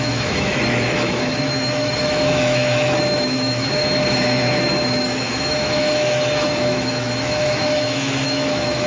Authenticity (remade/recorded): remade